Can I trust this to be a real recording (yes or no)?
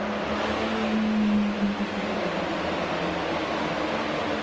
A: yes